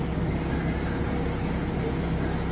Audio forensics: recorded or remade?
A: recorded